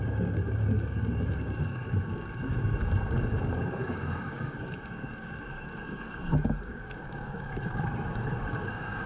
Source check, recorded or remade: remade